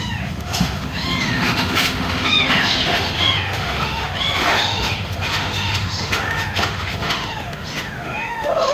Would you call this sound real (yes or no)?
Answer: no